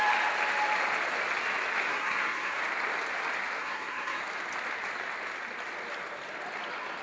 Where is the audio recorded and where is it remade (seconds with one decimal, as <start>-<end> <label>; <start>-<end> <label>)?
0.0-1.9 recorded; 1.9-2.6 remade; 2.6-3.6 recorded; 3.6-4.2 remade; 4.2-7.0 recorded